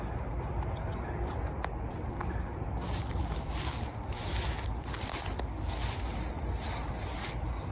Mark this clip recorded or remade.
recorded